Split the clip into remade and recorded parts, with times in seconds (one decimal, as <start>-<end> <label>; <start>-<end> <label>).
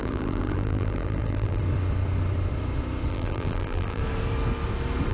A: 0.0-1.6 remade; 1.6-3.1 recorded; 3.1-4.0 remade; 4.0-5.1 recorded